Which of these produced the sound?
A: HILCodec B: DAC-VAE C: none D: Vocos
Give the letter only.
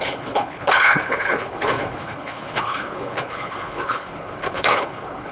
A